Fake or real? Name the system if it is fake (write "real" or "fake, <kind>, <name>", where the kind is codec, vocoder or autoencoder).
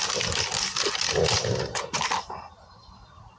real